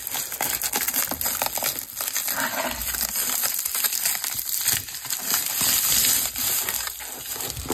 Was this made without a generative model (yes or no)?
yes